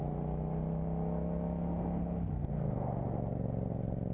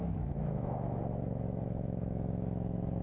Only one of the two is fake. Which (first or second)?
second